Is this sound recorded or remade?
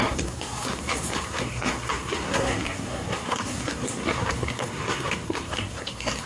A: remade